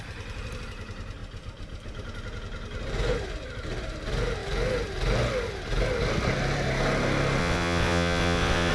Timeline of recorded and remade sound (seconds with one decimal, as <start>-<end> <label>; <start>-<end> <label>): 0.0-7.4 recorded; 7.4-8.7 remade